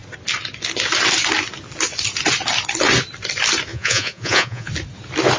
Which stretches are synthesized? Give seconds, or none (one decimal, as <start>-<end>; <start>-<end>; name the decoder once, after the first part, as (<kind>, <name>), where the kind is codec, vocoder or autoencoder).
3.7-4.7 (vocoder, Vocos)